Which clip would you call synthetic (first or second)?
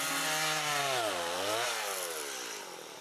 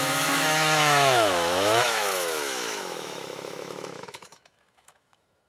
second